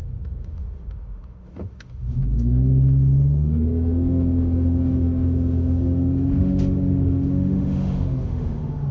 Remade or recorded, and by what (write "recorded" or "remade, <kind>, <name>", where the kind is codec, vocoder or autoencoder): remade, autoencoder, DAC-VAE